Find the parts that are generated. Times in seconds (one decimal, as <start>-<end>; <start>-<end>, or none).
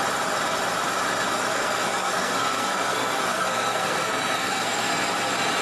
1.5-4.9